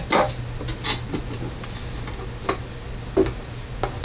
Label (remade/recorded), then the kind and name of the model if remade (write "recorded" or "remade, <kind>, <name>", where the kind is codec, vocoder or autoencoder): recorded